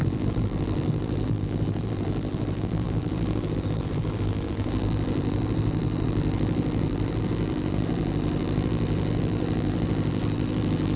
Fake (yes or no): yes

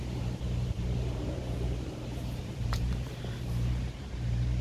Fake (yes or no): yes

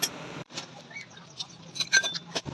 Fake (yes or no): yes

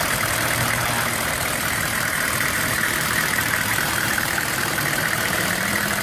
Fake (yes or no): yes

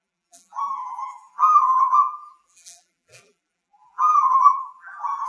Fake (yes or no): yes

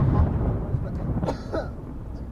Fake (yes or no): yes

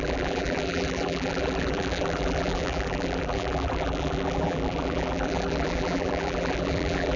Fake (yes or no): yes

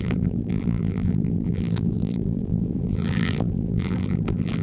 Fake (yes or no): yes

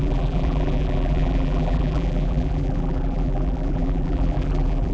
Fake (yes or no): yes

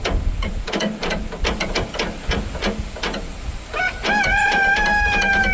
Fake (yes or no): no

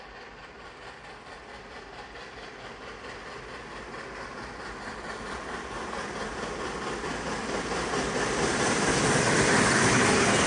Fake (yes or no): no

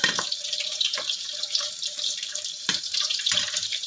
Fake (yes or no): yes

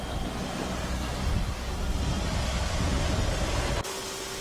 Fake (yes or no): no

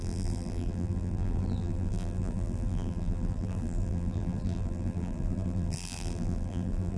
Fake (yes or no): yes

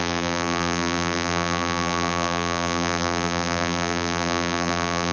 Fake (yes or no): yes